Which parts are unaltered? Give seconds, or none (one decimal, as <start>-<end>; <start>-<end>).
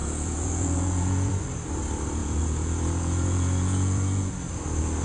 1.3-2.2; 4.3-5.0